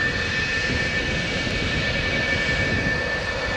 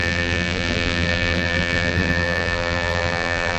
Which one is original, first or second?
first